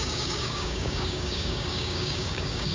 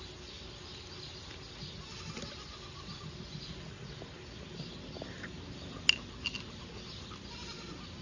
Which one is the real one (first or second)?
second